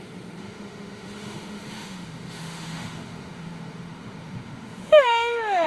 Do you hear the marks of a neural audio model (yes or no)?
yes